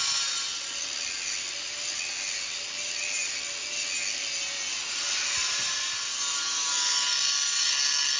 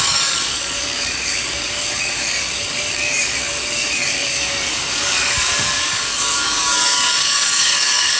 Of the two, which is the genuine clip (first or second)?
first